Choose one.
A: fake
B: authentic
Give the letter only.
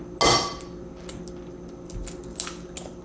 B